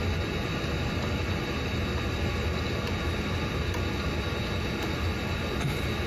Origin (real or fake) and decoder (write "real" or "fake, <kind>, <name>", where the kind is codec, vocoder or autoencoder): real